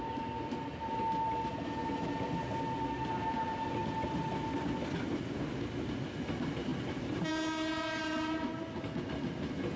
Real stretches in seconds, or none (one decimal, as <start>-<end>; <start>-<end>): 0.0-9.8